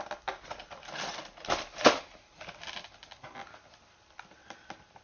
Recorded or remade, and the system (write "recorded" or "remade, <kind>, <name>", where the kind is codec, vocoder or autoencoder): recorded